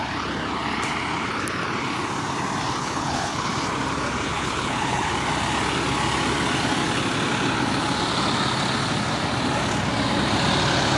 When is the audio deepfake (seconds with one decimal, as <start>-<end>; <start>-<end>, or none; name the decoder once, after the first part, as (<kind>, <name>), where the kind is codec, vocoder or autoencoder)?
2.8-3.5 (codec, HILCodec); 4.3-5.1